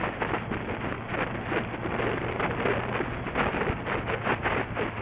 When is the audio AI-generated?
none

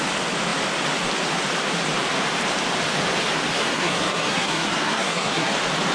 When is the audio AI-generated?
3.5-5.5

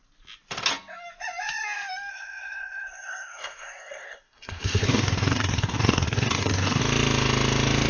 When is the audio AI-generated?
2.1-6.8

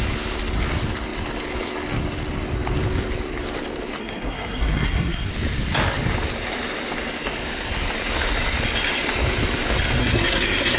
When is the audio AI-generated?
4.0-5.3; 10.0-10.8

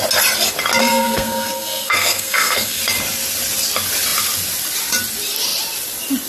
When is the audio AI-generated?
0.8-2.8

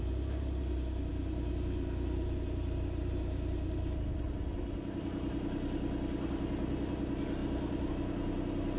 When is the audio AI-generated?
none

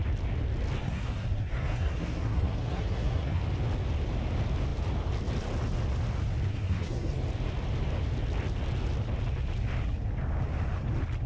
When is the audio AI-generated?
0.8-3.4; 6.5-7.1